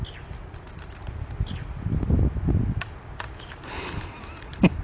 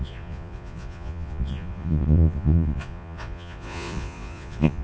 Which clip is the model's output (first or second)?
second